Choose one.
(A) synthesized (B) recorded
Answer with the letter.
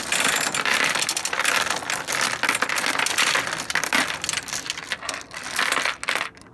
B